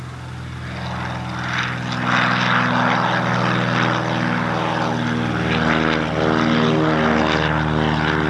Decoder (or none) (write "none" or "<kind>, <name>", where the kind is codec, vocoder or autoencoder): none